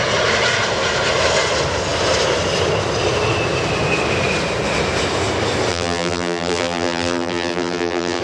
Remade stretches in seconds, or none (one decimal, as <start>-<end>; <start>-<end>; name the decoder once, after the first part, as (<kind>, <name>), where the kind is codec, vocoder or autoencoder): 5.7-8.2 (vocoder, BigVGAN v2)